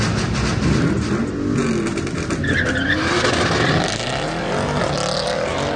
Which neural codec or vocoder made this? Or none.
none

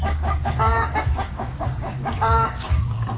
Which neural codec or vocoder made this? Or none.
codec, DAC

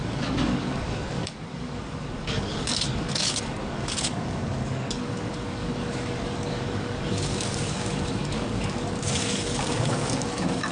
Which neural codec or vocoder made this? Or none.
codec, DAC